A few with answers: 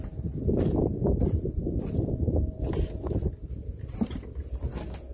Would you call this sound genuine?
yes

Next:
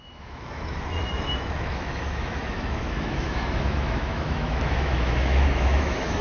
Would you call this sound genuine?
no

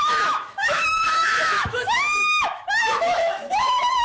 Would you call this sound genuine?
no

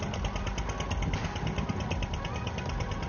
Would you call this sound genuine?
yes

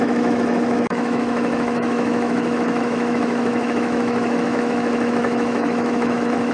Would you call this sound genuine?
no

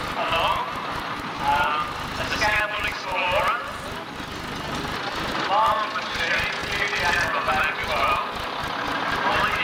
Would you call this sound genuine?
yes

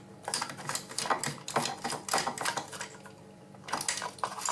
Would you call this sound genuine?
yes